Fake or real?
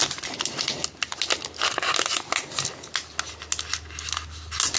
real